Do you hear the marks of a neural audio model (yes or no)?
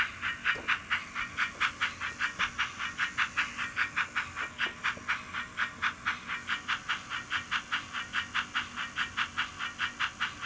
no